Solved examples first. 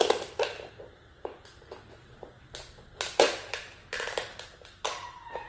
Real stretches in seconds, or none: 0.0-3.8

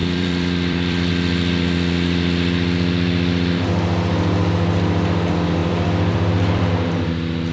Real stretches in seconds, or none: 1.1-5.6; 6.7-7.5